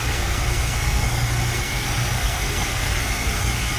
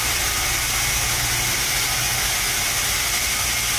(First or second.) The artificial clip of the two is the first